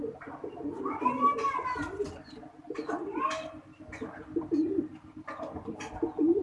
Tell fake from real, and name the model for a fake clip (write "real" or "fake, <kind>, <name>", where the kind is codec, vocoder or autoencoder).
real